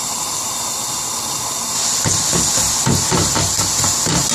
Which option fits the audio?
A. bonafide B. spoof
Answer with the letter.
A